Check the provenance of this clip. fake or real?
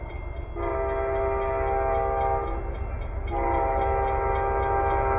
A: real